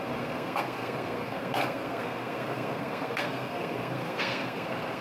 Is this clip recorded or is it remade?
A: remade